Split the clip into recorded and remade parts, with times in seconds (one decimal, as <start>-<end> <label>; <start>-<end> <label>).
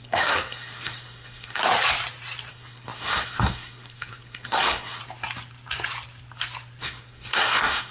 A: 0.0-1.6 remade; 1.6-2.5 recorded; 2.5-5.0 remade; 5.0-6.8 recorded; 6.8-7.9 remade